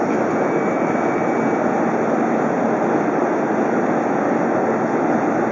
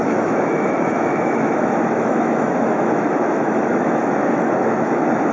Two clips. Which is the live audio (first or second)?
first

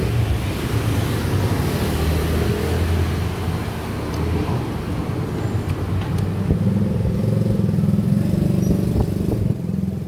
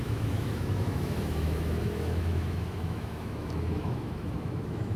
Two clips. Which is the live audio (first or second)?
first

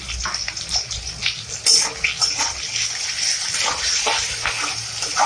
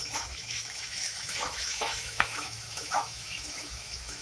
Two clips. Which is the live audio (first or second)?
first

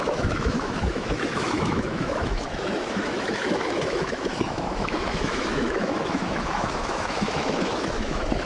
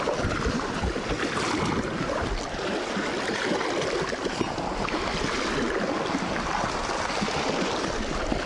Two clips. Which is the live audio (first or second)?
second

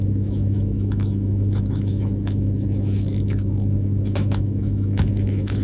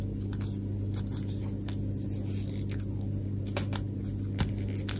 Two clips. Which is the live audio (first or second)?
second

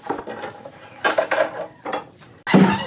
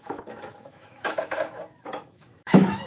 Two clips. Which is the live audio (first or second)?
first